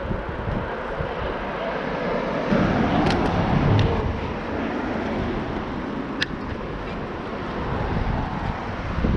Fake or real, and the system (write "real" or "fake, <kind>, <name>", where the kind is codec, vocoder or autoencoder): real